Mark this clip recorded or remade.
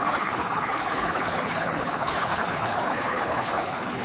remade